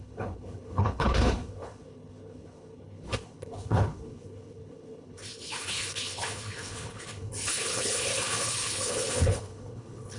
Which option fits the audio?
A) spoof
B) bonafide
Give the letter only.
A